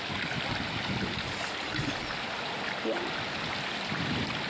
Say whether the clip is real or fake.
real